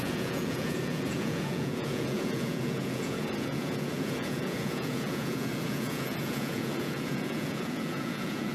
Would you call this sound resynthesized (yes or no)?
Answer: yes